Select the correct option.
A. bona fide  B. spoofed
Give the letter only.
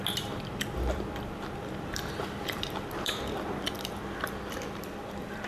B